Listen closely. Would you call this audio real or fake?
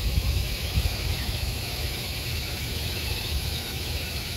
fake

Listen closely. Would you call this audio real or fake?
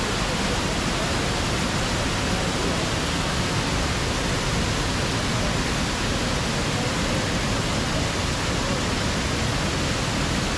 real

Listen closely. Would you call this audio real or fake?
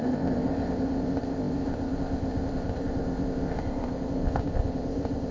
fake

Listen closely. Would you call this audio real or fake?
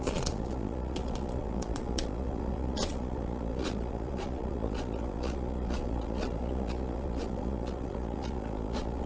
fake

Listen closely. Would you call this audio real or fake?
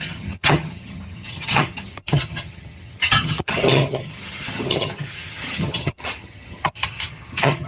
fake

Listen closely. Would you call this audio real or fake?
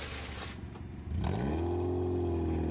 real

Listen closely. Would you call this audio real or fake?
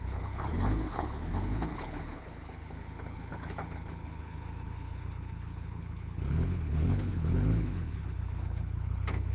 fake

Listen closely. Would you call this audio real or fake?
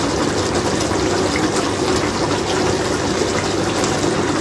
real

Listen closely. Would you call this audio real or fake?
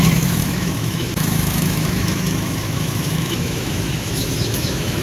fake